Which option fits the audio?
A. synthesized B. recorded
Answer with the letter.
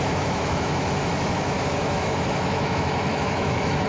A